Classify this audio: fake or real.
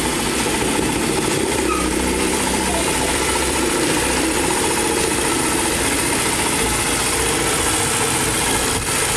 fake